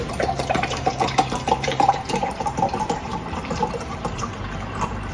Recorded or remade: remade